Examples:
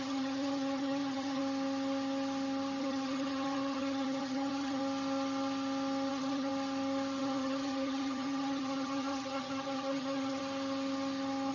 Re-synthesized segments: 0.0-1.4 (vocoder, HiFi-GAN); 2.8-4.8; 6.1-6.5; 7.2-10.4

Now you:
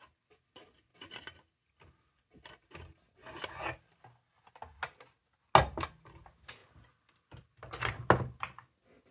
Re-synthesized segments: none